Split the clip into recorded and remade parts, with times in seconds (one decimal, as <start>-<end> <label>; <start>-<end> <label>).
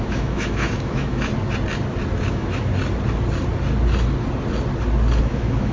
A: 0.0-1.3 remade; 1.3-2.3 recorded; 2.3-2.7 remade; 2.7-5.2 recorded; 5.2-5.7 remade